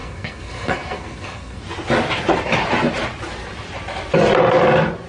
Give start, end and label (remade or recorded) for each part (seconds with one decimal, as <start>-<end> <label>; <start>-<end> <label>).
0.0-1.6 remade; 1.6-5.1 recorded